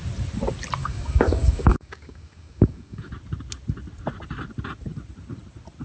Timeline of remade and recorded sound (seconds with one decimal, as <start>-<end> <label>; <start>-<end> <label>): 0.0-0.8 recorded; 0.8-3.1 remade; 3.1-5.8 recorded